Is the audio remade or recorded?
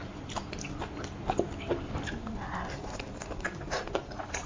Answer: recorded